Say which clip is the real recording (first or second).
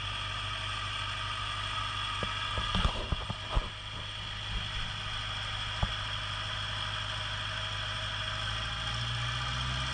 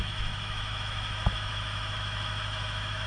first